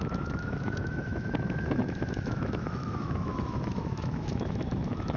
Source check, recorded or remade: remade